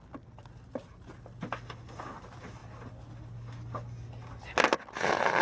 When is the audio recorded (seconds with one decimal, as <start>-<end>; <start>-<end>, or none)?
0.0-5.4